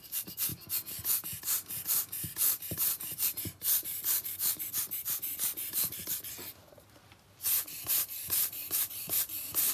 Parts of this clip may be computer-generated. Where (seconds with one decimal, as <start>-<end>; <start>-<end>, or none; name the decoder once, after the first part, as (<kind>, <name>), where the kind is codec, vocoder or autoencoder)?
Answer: 0.0-0.5 (vocoder, BigVGAN v2); 2.7-6.0; 7.8-9.7